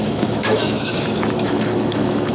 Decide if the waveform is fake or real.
fake